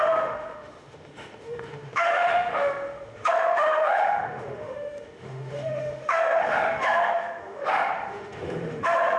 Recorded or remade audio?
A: remade